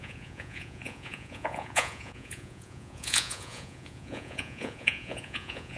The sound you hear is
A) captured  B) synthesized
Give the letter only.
B